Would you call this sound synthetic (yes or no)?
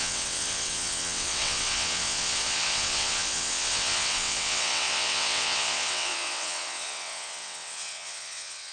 yes